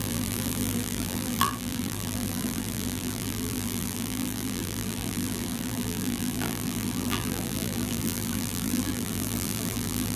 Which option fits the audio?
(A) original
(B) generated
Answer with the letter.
B